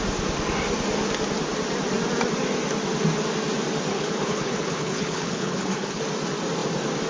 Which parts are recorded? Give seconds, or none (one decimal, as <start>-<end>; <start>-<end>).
0.0-3.9; 6.0-7.1